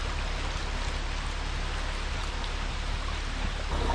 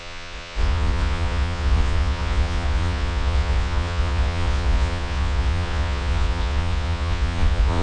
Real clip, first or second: first